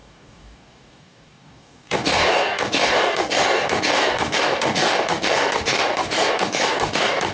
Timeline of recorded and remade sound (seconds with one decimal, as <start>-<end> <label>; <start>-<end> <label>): 0.0-7.3 remade